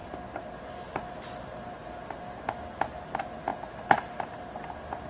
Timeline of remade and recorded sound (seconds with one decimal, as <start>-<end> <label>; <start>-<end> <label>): 0.0-5.1 recorded

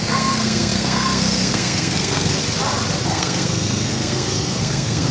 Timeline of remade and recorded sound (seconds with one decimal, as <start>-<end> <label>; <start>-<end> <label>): 0.0-2.4 remade; 2.4-3.0 recorded; 3.0-5.1 remade